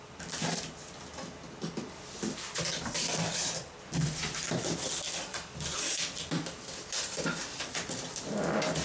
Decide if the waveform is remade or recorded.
recorded